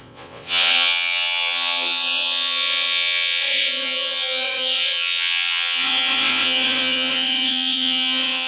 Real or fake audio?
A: fake